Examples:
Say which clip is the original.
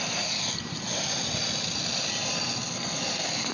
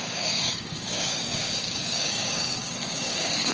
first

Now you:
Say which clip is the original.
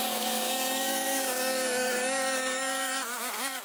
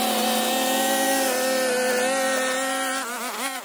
second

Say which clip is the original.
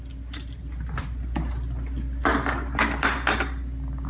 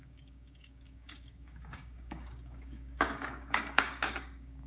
first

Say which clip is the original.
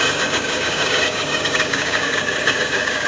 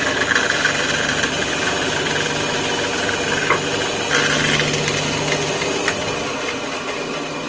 second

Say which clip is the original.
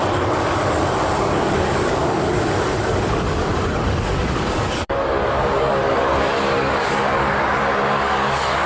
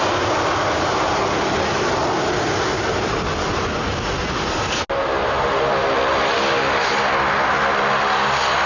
second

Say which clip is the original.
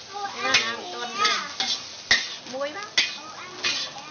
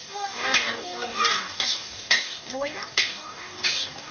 first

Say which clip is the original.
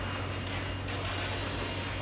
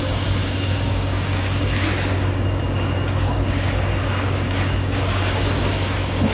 first